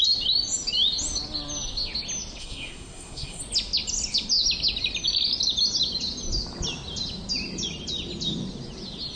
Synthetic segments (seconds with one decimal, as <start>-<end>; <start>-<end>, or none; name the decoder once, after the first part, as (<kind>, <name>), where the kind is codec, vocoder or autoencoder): 2.4-3.4 (codec, SNAC)